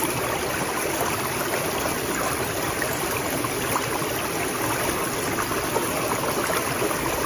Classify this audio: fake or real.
real